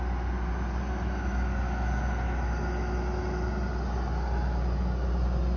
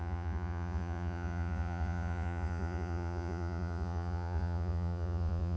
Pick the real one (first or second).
first